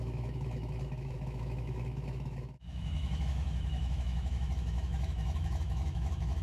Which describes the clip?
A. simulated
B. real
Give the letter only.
A